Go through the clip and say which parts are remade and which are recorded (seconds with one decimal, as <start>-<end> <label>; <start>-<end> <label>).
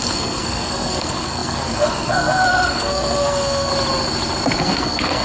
0.0-3.7 remade; 3.7-4.6 recorded; 4.6-5.2 remade